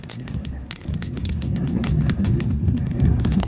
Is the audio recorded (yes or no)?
no